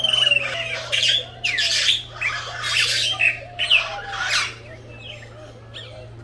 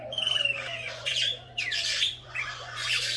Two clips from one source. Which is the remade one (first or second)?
second